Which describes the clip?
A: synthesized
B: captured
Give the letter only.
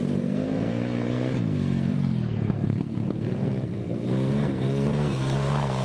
A